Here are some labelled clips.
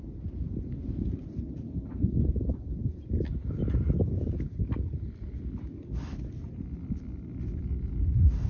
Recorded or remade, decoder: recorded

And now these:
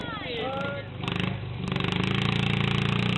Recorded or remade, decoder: recorded